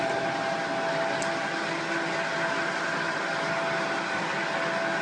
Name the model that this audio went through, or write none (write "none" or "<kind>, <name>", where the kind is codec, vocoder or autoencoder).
none